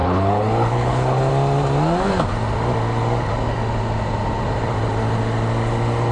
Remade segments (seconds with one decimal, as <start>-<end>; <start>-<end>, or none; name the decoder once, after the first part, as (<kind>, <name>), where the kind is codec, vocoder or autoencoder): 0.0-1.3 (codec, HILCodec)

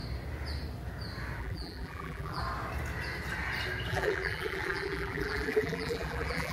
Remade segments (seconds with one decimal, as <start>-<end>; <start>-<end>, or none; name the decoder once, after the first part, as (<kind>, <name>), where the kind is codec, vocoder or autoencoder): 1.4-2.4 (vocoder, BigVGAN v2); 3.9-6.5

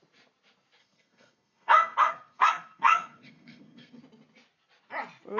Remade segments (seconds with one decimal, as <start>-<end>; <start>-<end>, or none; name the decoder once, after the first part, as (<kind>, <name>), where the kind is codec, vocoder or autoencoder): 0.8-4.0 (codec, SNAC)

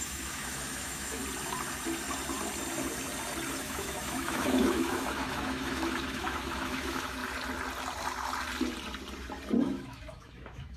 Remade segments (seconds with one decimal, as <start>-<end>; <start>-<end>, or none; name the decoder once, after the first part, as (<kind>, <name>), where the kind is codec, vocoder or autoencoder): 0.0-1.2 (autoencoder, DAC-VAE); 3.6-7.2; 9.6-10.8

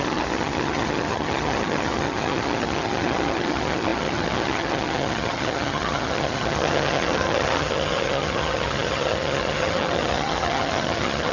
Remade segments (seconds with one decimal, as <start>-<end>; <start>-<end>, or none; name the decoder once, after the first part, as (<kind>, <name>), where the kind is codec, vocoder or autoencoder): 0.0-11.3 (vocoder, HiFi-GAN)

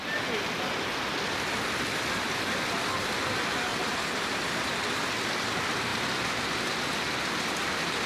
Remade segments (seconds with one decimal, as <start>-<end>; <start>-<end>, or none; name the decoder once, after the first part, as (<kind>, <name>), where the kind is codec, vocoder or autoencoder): 3.7-4.7 (vocoder, BigVGAN v2)

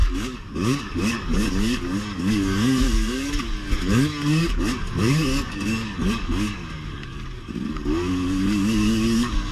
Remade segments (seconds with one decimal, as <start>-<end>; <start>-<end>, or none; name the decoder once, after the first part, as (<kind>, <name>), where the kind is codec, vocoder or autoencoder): 0.0-9.5 (codec, DAC)